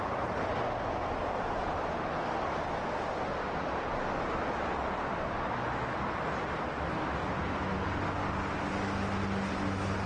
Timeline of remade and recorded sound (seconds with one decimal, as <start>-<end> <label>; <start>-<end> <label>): 0.0-10.1 recorded